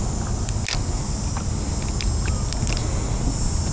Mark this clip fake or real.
real